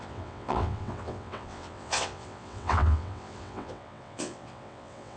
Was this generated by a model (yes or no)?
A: yes